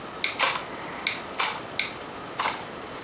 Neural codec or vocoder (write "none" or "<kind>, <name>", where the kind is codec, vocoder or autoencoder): none